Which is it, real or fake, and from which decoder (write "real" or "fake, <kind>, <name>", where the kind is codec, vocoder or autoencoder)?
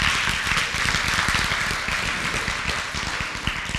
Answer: real